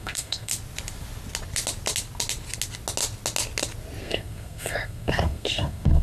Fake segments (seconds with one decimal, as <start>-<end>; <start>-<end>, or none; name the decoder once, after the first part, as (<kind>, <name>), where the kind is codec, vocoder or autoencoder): 0.0-0.5 (codec, SNAC); 4.0-6.0